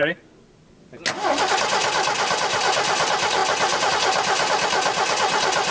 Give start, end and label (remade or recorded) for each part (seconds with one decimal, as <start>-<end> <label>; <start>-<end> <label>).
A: 0.0-5.7 recorded